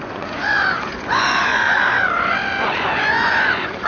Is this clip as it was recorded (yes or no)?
no